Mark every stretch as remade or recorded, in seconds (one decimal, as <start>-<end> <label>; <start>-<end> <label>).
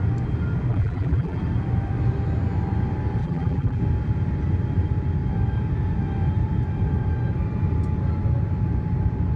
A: 0.0-0.7 recorded; 0.7-1.4 remade; 1.4-3.2 recorded; 3.2-3.8 remade; 3.8-9.4 recorded